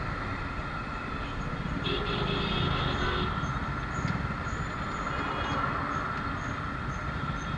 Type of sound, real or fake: real